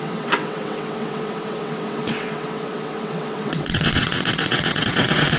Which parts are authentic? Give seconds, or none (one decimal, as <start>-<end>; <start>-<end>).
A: none